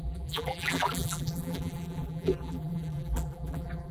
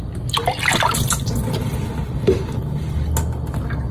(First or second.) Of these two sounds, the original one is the second